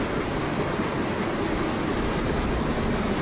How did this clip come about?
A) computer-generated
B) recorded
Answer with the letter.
B